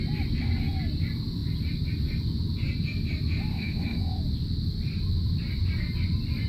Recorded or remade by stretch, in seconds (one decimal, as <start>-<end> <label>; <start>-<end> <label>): 0.0-3.5 recorded; 3.5-4.2 remade; 4.2-6.5 recorded